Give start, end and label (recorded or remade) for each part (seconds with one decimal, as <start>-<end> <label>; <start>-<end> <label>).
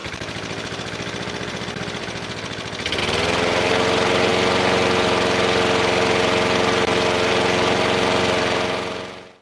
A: 0.0-9.4 recorded